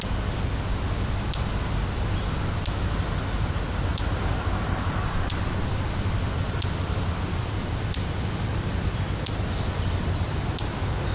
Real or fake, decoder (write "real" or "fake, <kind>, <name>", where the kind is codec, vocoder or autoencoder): real